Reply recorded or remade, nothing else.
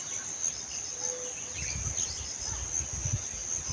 recorded